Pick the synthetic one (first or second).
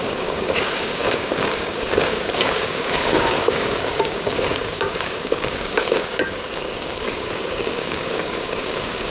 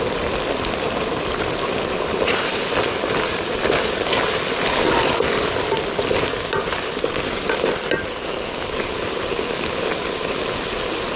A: first